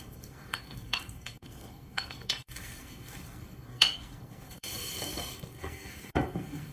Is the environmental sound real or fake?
fake